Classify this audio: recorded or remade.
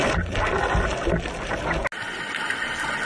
recorded